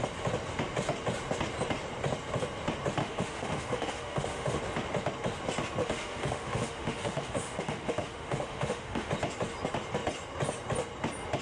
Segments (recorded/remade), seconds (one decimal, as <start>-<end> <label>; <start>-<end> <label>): 0.0-3.0 recorded; 3.0-4.6 remade; 4.6-5.8 recorded; 5.8-9.1 remade; 9.1-11.4 recorded